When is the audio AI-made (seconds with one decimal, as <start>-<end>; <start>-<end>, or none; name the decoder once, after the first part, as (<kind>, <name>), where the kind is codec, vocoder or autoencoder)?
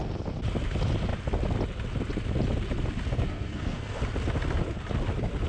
3.1-4.0 (codec, SNAC)